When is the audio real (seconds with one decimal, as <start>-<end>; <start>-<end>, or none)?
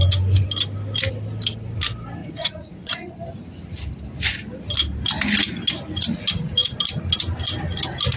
0.0-2.2; 3.1-8.2